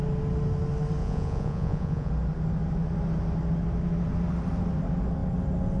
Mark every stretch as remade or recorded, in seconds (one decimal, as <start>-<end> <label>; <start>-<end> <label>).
0.0-1.0 recorded; 1.0-2.1 remade; 2.1-5.8 recorded